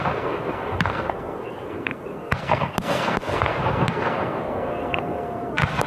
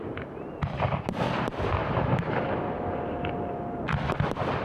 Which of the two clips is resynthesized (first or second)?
first